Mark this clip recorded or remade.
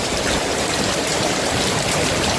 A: remade